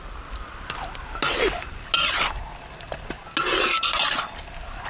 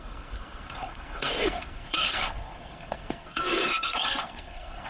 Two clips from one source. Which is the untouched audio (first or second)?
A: first